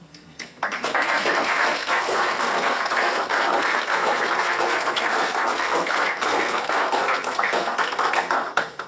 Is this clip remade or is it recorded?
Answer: remade